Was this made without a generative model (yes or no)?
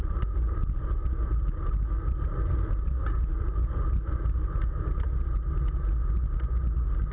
yes